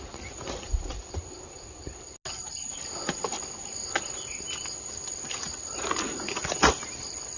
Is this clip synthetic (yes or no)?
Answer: no